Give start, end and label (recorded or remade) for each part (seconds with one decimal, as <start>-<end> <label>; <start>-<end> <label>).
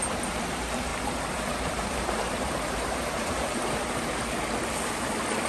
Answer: 0.0-0.9 recorded; 0.9-3.9 remade; 3.9-5.5 recorded